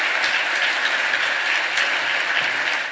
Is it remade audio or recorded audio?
recorded